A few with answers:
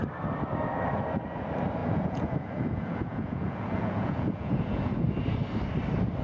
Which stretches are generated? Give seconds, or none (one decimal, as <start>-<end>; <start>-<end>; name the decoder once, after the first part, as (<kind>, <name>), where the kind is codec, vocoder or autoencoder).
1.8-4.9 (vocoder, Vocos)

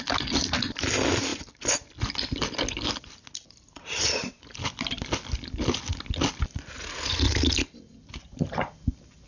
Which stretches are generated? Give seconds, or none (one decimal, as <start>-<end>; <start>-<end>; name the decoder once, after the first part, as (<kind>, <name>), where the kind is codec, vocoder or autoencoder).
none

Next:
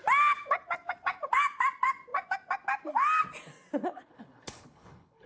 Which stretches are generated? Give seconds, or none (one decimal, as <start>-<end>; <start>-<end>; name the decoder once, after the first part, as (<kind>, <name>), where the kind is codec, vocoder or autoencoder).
3.8-5.3 (codec, HILCodec)